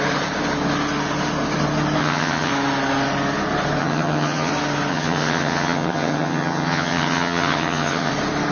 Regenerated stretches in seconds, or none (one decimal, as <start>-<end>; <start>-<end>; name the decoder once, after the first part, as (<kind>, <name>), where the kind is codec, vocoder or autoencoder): 2.0-2.5 (vocoder, HiFi-GAN); 3.8-4.5; 4.9-8.1